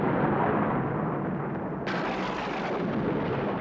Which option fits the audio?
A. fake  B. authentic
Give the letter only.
B